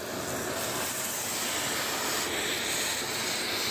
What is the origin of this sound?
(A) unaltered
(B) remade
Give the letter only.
A